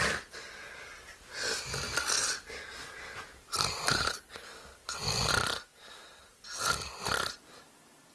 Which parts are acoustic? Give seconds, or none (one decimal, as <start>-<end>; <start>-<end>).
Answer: 0.0-3.9; 4.5-8.1